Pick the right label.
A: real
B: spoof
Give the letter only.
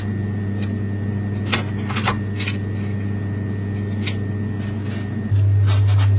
A